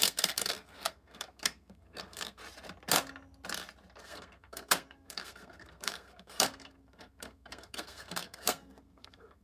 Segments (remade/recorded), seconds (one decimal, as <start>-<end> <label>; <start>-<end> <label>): 0.0-2.4 remade; 2.4-4.0 recorded; 4.0-9.4 remade